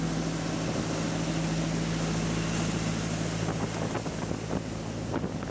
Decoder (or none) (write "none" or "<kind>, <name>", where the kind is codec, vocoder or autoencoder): none